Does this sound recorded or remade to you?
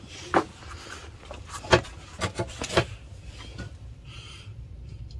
remade